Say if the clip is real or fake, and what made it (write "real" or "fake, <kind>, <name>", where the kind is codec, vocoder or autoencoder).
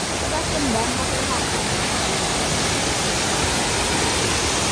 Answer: real